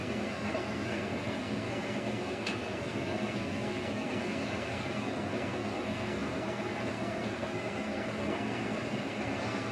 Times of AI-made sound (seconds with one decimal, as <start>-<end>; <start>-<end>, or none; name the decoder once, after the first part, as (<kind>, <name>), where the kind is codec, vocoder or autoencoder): 0.0-9.7 (codec, SNAC)